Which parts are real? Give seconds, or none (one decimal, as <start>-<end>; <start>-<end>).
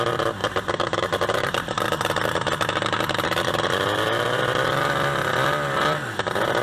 0.0-0.4; 4.4-6.6